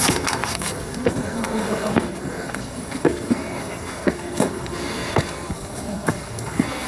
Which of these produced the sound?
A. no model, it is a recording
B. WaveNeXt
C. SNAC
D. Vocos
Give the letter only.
C